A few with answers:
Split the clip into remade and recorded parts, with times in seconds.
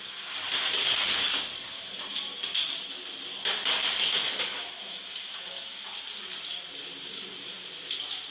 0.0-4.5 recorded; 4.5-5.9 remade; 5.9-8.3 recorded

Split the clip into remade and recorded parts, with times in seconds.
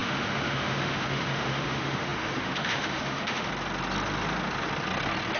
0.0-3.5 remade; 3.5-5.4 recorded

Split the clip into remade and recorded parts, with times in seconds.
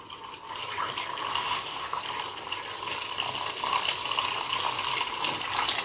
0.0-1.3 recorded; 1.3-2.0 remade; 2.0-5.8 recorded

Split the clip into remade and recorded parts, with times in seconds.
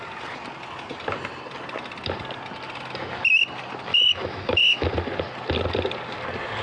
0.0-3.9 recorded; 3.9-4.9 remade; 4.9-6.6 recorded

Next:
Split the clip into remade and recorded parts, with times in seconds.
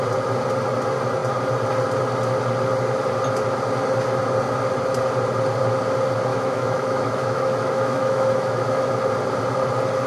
0.0-6.3 recorded; 6.3-8.9 remade; 8.9-10.1 recorded